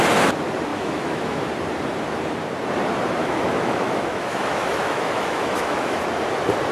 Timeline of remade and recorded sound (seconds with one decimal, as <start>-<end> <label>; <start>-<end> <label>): 0.0-0.7 recorded; 0.7-1.5 remade; 1.5-3.2 recorded; 3.2-6.0 remade; 6.0-6.7 recorded